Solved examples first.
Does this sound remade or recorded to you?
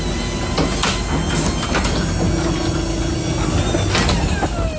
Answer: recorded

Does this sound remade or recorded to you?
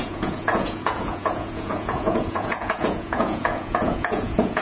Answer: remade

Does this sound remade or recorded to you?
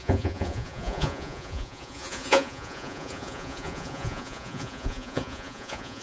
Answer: remade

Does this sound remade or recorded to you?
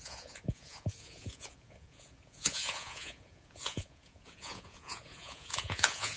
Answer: remade